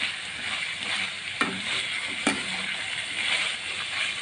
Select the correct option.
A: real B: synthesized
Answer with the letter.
A